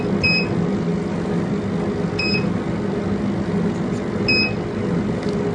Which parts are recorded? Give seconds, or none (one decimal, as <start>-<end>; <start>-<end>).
0.0-5.5